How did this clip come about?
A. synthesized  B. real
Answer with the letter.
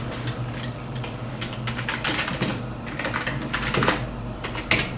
B